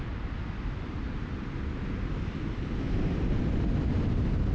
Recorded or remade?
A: recorded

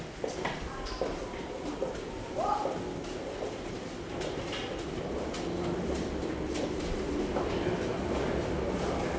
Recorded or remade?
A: recorded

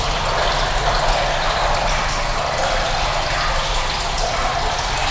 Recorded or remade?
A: recorded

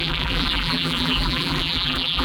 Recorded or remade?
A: remade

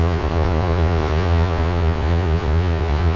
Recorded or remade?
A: remade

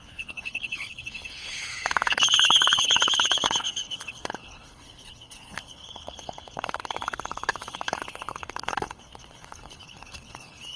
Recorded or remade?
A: remade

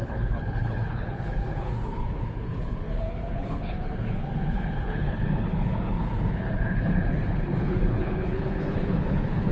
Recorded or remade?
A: remade